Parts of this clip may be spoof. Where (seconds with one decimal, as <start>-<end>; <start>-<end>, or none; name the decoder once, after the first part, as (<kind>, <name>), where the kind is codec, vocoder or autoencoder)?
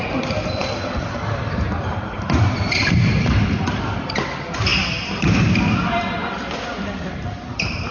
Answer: 0.0-4.7 (vocoder, BigVGAN v2); 7.1-7.9